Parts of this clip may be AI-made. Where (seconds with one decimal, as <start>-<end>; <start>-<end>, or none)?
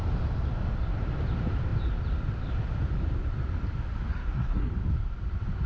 4.1-4.7